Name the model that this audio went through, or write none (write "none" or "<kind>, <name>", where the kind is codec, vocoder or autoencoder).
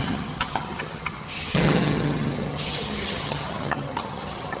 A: vocoder, HiFi-GAN